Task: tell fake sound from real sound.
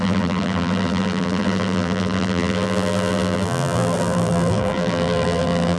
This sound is fake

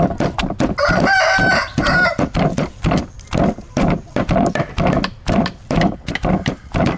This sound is fake